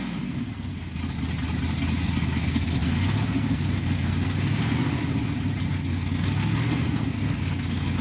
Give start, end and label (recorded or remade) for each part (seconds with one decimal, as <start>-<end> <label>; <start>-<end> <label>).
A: 0.0-1.0 remade; 1.0-2.0 recorded; 2.0-5.0 remade; 5.0-5.7 recorded; 5.7-8.0 remade